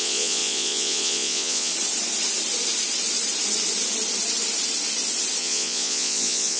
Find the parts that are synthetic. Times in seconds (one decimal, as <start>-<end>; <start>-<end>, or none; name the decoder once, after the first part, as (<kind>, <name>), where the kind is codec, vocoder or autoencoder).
0.0-1.7 (vocoder, Vocos); 5.4-6.6